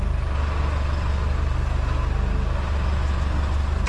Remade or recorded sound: recorded